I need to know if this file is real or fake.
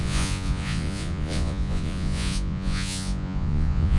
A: fake